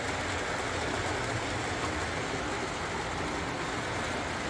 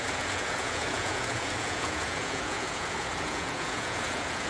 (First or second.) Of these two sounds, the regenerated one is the second